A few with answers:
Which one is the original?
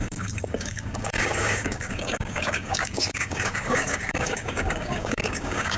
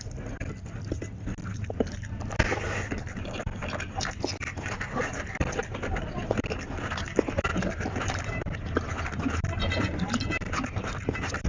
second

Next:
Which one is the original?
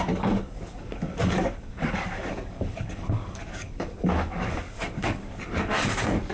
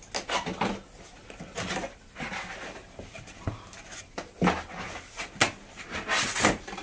second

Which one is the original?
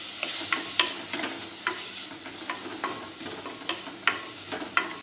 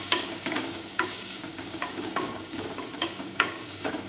first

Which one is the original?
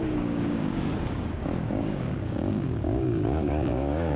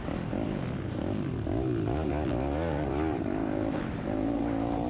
second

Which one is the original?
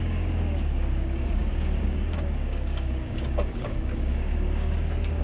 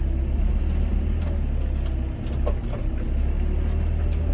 second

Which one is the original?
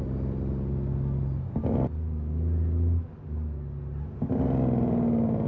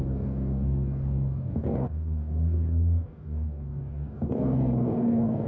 first